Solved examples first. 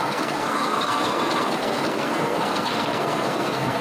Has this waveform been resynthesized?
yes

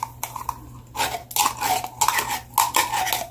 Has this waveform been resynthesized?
no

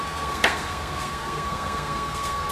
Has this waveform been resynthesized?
yes